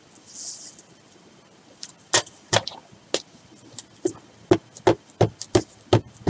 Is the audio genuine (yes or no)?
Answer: yes